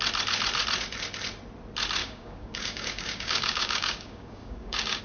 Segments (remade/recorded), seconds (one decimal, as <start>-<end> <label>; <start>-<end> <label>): 0.0-2.0 recorded; 2.0-5.0 remade